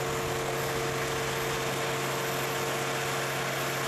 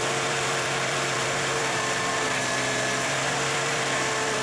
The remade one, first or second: second